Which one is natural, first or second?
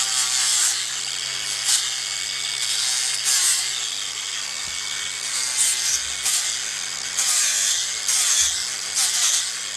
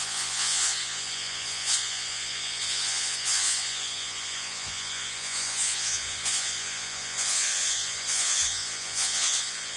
first